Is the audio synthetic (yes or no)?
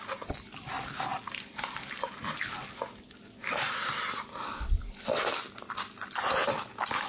no